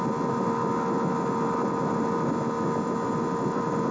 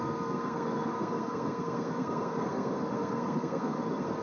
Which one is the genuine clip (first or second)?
first